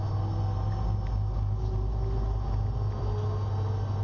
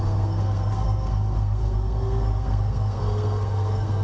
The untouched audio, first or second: first